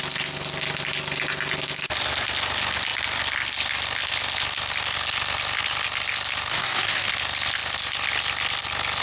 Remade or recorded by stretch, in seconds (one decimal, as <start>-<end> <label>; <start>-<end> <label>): 0.0-6.5 recorded; 6.5-7.1 remade; 7.1-9.0 recorded